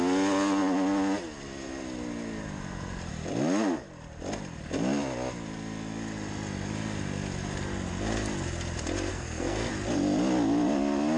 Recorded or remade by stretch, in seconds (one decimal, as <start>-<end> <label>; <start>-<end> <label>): 0.0-9.1 recorded; 9.1-9.7 remade; 9.7-11.2 recorded

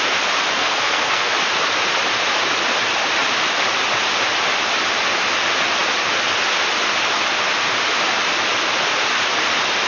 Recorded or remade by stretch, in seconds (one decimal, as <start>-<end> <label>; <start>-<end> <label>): 0.0-0.6 recorded; 0.6-1.3 remade; 1.3-9.9 recorded

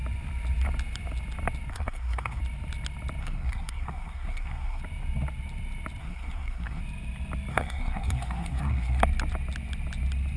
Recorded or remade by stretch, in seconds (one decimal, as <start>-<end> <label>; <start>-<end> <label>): 0.0-1.7 recorded; 1.7-2.4 remade; 2.4-3.2 recorded; 3.2-4.8 remade; 4.8-6.0 recorded; 6.0-6.8 remade; 6.8-7.5 recorded; 7.5-9.0 remade; 9.0-10.4 recorded

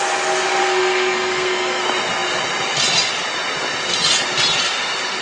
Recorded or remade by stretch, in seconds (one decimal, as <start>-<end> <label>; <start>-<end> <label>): 0.0-0.6 recorded; 0.6-1.8 remade; 1.8-5.2 recorded

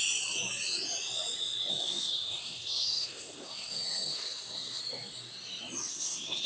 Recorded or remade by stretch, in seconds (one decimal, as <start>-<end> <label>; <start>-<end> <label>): 0.0-1.7 recorded; 1.7-4.8 remade; 4.8-5.9 recorded; 5.9-6.5 remade